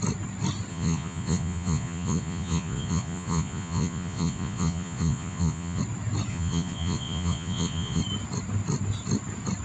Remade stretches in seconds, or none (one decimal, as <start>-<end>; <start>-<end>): 0.7-5.8; 6.3-8.0